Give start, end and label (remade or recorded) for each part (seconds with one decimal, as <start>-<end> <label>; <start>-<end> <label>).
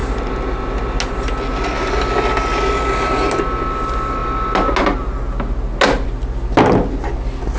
0.0-7.6 recorded